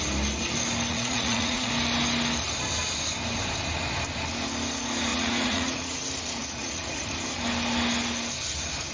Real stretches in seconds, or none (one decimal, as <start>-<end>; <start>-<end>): 0.0-0.9; 1.7-5.1; 6.0-6.4; 7.1-8.9

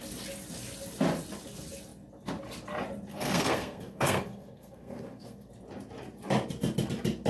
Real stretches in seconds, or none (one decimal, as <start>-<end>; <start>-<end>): 0.0-3.1; 5.5-7.3

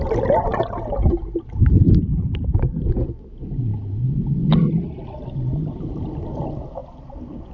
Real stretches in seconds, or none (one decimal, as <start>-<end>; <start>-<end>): 0.0-7.5

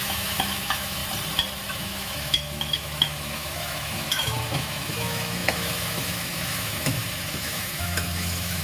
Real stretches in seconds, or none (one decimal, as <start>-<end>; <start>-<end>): 1.0-1.7

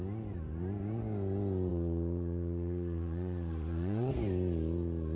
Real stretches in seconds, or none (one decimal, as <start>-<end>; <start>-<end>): 0.0-1.7; 4.1-5.2

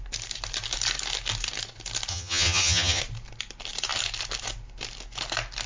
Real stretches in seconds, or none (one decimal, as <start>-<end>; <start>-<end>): 0.0-2.1; 3.0-5.7